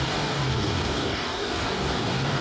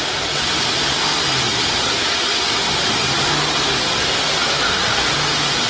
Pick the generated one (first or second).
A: first